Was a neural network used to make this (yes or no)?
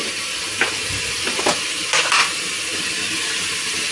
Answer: yes